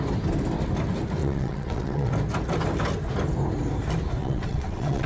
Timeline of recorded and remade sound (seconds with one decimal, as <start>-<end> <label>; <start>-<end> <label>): 0.0-1.2 recorded; 1.2-2.1 remade; 2.1-4.2 recorded; 4.2-5.1 remade

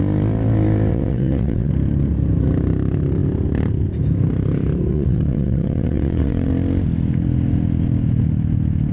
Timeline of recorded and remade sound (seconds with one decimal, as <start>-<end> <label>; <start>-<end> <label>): 0.0-0.9 recorded; 0.9-1.7 remade; 1.7-4.9 recorded; 4.9-6.5 remade; 6.5-8.9 recorded

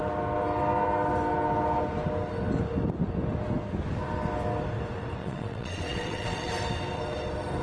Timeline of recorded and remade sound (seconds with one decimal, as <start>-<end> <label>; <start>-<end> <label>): 0.0-5.2 recorded; 5.2-6.5 remade; 6.5-7.6 recorded

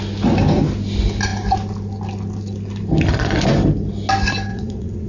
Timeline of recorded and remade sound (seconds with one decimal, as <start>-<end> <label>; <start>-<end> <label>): 0.0-4.5 recorded; 4.5-5.1 remade